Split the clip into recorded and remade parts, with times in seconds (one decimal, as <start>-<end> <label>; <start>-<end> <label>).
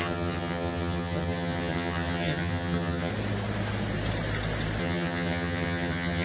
0.0-3.1 remade; 3.1-4.8 recorded; 4.8-6.2 remade